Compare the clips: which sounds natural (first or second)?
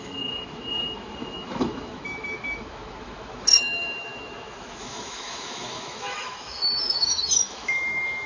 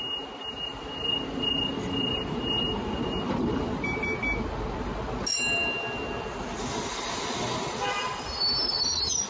second